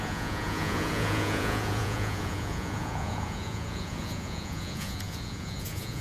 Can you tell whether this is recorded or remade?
remade